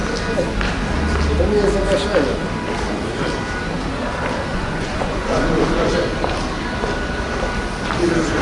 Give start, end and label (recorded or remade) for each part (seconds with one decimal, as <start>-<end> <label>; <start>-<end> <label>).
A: 0.0-4.5 recorded; 4.5-5.9 remade; 5.9-8.4 recorded